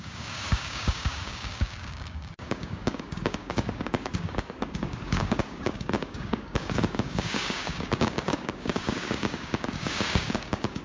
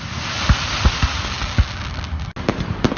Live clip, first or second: second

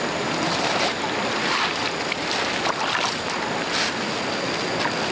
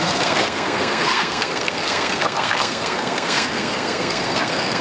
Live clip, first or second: first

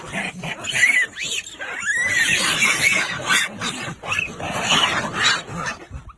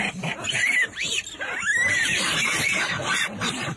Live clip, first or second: first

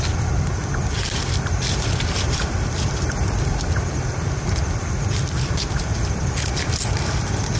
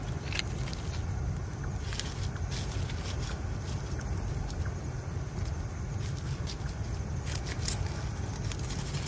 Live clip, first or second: second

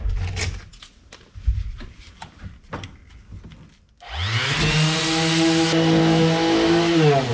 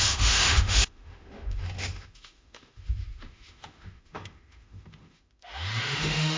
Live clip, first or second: first